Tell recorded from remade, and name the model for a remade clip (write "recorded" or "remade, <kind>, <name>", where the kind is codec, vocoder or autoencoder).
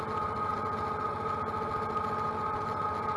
recorded